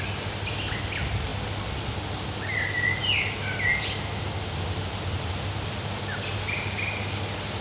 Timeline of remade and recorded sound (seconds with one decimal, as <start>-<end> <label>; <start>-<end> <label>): 0.0-7.6 recorded